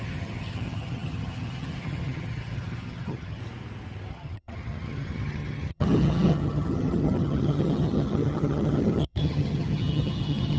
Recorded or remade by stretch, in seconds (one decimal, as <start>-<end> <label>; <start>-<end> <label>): 0.0-3.4 remade; 3.4-4.1 recorded; 4.1-10.6 remade